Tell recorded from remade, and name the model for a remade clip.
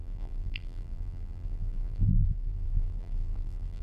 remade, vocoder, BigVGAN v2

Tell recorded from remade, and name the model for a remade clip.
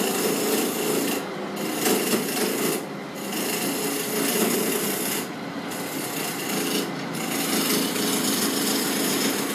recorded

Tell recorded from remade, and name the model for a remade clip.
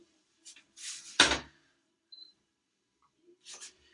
remade, vocoder, BigVGAN v2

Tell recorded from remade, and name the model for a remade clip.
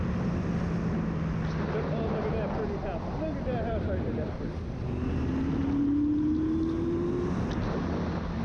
recorded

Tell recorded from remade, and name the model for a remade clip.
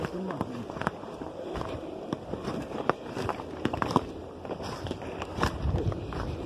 remade, vocoder, BigVGAN v2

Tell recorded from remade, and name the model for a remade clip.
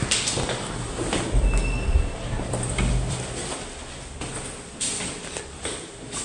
remade, vocoder, BigVGAN v2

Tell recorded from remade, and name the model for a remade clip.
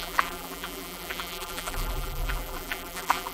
remade, vocoder, BigVGAN v2